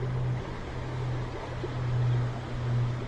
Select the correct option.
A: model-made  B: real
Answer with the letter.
B